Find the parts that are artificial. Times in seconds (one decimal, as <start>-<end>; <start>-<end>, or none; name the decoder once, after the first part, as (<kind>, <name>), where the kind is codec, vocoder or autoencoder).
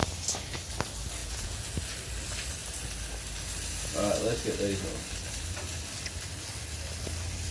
1.2-1.7 (vocoder, Vocos)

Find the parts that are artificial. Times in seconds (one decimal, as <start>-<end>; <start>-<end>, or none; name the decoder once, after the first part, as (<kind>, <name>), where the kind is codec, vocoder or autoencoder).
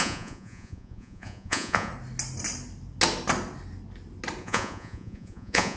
0.0-1.9 (vocoder, Vocos); 4.4-5.8